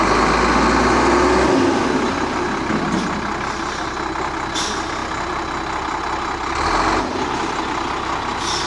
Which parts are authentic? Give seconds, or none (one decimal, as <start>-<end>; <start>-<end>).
0.0-8.7